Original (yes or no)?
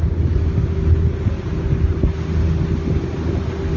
yes